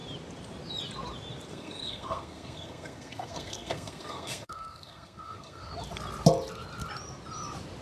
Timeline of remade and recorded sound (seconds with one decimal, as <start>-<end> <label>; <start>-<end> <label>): 0.0-1.5 recorded; 1.5-5.7 remade; 5.7-7.8 recorded